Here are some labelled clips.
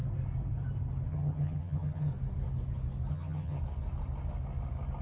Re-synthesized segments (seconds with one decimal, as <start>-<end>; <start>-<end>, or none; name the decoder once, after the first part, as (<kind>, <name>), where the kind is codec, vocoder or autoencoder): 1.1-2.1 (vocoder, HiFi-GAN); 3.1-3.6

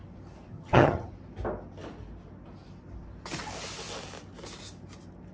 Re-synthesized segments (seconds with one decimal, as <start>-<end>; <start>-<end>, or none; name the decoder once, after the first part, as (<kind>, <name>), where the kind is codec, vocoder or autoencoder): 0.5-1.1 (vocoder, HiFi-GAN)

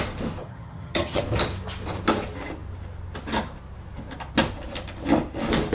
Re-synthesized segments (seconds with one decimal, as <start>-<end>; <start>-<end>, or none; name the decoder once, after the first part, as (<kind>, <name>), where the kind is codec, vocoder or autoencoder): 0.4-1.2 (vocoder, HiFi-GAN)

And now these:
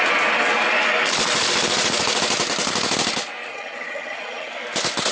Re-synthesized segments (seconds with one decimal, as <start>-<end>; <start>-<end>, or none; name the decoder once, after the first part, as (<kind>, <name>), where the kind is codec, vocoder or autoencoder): 3.5-4.5 (vocoder, HiFi-GAN)

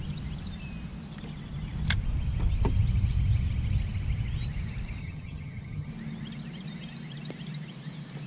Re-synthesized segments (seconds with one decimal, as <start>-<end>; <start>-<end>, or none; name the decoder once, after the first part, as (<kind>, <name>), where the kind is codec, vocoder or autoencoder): 5.0-5.9 (vocoder, HiFi-GAN)

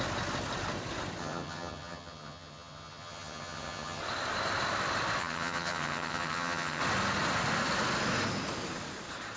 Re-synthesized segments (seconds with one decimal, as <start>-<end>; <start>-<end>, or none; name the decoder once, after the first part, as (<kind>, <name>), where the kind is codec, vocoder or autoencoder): 1.2-4.0 (vocoder, HiFi-GAN); 5.2-6.8

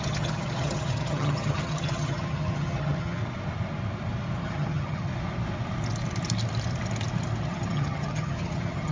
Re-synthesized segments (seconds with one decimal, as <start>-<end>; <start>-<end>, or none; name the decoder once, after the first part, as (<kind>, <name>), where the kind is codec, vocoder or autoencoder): 0.0-3.2 (vocoder, HiFi-GAN); 4.4-5.1; 7.4-8.9

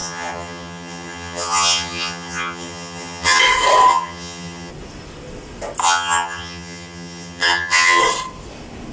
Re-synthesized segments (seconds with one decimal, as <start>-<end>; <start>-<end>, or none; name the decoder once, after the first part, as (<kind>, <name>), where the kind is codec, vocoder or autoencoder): 0.0-3.4 (vocoder, HiFi-GAN); 3.9-4.7; 5.8-8.0